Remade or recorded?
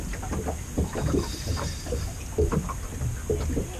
recorded